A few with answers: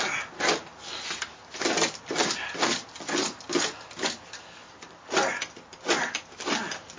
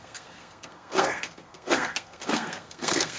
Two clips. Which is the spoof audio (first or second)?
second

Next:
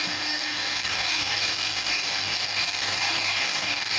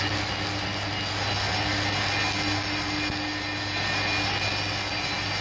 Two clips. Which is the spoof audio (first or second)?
first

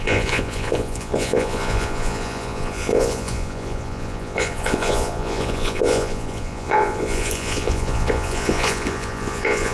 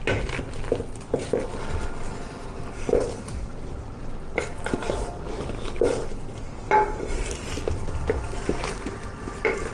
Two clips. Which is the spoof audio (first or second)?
first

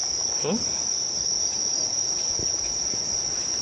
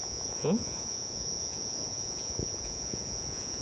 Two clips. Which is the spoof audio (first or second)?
second